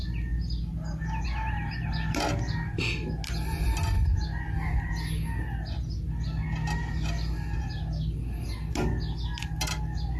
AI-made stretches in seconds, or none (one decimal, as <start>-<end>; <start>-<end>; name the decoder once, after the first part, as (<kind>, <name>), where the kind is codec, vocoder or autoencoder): none